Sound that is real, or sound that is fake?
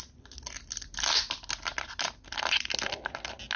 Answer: real